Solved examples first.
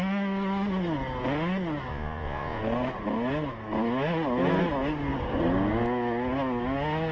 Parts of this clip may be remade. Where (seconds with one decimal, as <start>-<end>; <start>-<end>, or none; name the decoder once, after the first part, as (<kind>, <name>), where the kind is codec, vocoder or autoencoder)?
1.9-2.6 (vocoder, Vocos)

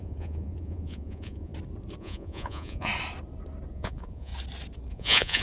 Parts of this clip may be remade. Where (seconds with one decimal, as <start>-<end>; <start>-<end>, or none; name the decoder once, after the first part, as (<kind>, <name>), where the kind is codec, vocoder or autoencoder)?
0.0-1.5 (vocoder, Vocos); 2.0-2.9; 3.7-4.3; 4.9-5.4

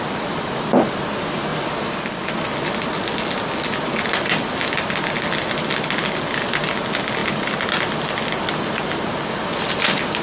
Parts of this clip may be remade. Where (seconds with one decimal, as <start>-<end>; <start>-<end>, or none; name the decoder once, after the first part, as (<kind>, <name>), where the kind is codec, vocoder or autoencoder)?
none

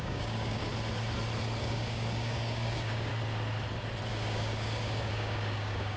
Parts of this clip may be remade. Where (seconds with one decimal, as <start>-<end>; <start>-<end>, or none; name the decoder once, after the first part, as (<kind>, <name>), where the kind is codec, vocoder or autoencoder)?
0.0-0.7 (codec, DAC); 1.6-3.1; 4.1-6.0

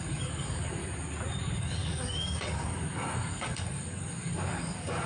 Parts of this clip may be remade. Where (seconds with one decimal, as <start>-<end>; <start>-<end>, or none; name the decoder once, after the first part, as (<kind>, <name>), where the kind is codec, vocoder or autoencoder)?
0.0-0.8 (codec, DAC); 1.4-5.1